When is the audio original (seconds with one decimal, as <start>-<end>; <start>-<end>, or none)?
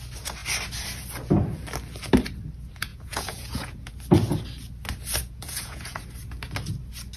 0.0-2.9; 3.9-5.2; 6.0-7.2